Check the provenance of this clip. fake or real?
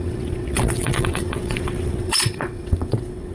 fake